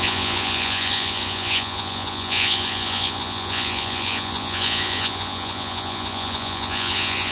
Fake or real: fake